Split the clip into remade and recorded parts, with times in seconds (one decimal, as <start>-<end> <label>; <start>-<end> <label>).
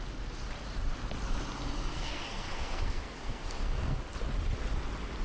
0.0-1.8 recorded; 1.8-4.0 remade; 4.0-5.2 recorded